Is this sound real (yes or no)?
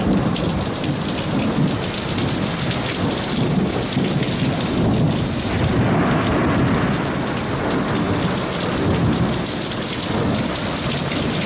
yes